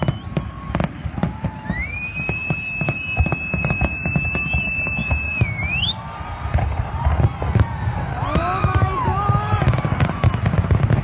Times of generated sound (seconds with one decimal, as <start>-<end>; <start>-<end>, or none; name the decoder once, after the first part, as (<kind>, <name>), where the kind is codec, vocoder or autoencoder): none